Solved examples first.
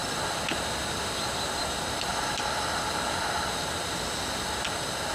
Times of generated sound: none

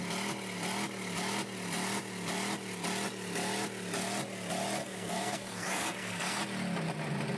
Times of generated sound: 4.8-6.4 (codec, SNAC)